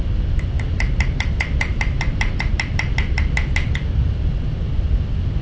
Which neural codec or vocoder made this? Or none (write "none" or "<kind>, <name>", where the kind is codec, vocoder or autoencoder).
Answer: vocoder, BigVGAN v2